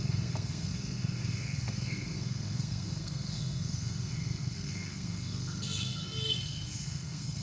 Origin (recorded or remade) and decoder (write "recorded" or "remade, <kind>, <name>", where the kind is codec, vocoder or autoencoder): remade, codec, SNAC